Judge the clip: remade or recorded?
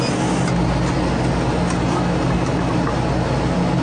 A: recorded